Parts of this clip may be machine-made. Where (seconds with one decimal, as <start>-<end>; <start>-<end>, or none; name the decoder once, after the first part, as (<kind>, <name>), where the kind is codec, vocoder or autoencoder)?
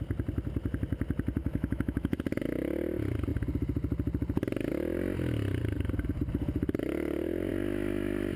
1.4-2.2 (autoencoder, DAC-VAE)